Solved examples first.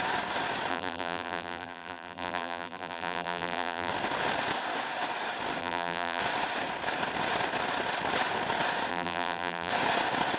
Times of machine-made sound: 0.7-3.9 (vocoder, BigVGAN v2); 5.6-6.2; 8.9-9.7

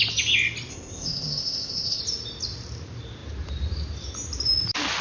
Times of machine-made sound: 0.7-2.0 (codec, ZipCodec)

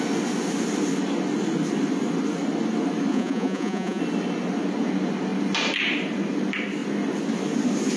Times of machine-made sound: 3.1-4.0 (vocoder, Vocos)

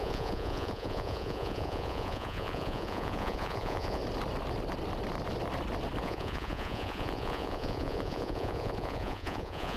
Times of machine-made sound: 0.0-4.0 (vocoder, Vocos); 6.0-9.8